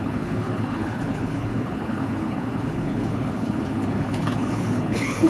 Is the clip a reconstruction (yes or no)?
yes